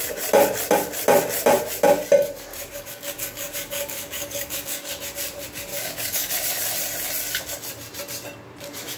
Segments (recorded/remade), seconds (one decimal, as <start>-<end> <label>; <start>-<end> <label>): 0.0-2.5 recorded; 2.5-4.9 remade; 4.9-5.7 recorded; 5.7-6.3 remade; 6.3-9.0 recorded